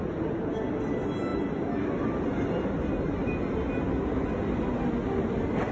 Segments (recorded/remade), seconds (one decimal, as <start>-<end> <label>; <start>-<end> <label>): 0.0-5.7 recorded